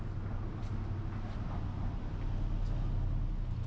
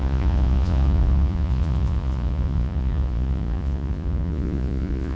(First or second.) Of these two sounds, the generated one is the second